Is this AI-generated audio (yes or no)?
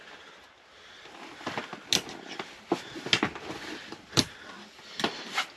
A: no